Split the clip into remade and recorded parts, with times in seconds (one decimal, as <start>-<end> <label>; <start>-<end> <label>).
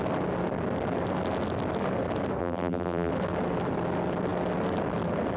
0.0-2.4 recorded; 2.4-3.1 remade; 3.1-5.4 recorded